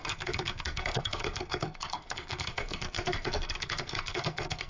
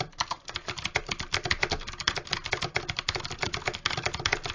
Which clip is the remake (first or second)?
first